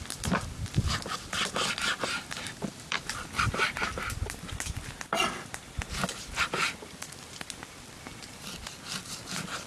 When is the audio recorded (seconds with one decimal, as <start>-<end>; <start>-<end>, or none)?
0.0-9.7